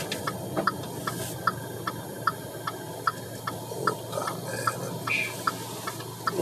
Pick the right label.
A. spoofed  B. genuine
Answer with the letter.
B